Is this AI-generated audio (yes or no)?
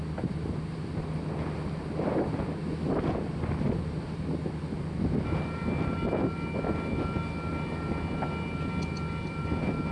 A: no